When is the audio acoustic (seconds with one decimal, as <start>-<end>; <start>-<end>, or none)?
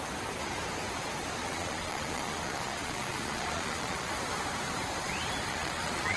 0.0-1.4; 4.1-5.5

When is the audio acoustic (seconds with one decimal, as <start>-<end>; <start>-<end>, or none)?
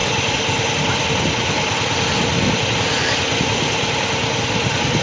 0.0-5.0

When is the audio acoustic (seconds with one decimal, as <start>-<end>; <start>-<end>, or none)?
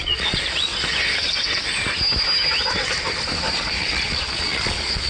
0.7-3.8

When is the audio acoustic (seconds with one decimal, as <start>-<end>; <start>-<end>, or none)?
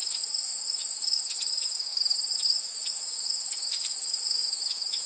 none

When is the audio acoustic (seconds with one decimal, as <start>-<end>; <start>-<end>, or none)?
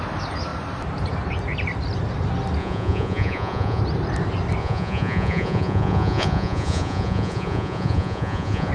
0.0-2.6; 3.8-4.6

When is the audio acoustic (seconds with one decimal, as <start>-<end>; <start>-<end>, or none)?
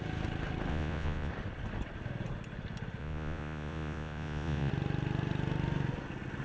0.0-0.7; 1.3-3.0; 4.7-6.4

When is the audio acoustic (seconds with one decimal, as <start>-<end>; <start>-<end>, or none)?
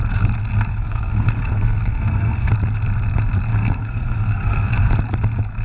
0.0-0.7; 2.5-3.5; 4.9-5.6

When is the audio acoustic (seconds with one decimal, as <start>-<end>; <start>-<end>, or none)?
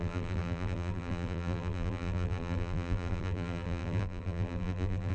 none